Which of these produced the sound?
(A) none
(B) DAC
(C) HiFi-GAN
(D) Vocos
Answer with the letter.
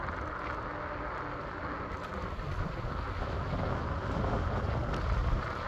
A